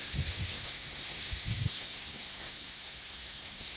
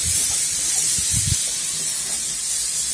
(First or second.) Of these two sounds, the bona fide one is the second